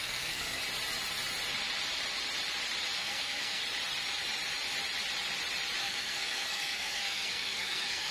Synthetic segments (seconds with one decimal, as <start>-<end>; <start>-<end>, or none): 0.0-0.6; 3.0-3.6; 5.8-8.1